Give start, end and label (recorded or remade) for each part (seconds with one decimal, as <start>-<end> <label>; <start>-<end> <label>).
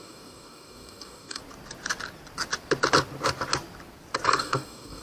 0.0-1.4 remade; 1.4-4.4 recorded; 4.4-5.0 remade